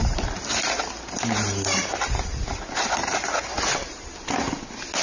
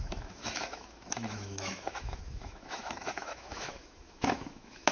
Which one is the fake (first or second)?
second